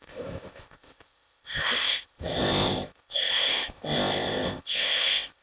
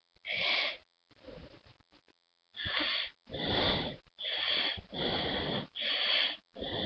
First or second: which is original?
second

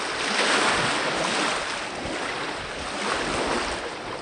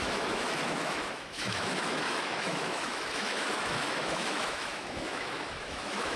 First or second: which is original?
first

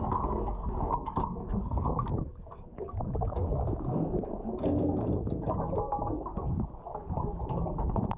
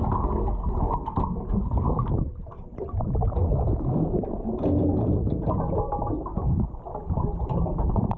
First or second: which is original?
second